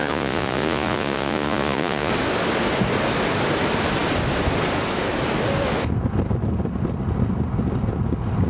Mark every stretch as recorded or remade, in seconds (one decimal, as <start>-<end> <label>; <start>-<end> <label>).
0.0-2.1 remade; 2.1-8.5 recorded